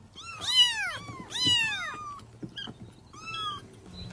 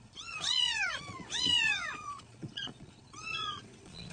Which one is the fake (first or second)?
second